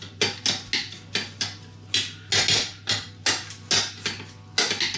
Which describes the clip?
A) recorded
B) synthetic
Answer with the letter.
A